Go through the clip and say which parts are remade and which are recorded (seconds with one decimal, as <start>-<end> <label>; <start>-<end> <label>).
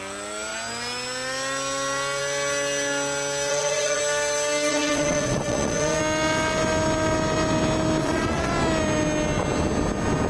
0.0-3.5 recorded; 3.5-4.0 remade; 4.0-4.7 recorded; 4.7-6.0 remade; 6.0-8.0 recorded; 8.0-8.5 remade; 8.5-10.3 recorded